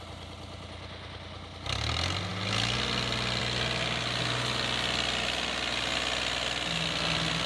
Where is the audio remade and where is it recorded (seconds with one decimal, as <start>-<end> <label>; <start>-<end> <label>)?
0.0-7.5 recorded